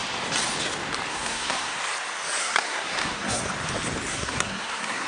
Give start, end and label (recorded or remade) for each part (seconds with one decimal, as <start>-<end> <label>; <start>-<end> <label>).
0.0-1.1 recorded; 1.1-1.8 remade; 1.8-2.4 recorded; 2.4-3.4 remade; 3.4-4.1 recorded; 4.1-5.1 remade